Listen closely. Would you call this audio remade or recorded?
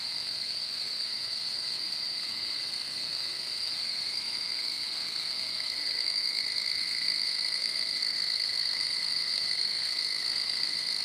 remade